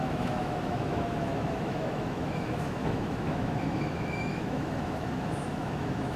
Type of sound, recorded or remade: remade